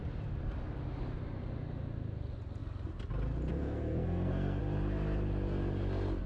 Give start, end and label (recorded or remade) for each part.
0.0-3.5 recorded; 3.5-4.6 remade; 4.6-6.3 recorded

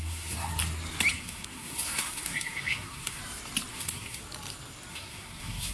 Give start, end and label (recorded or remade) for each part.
0.0-0.5 remade; 0.5-1.1 recorded; 1.1-3.2 remade; 3.2-3.7 recorded; 3.7-4.2 remade; 4.2-4.9 recorded; 4.9-5.7 remade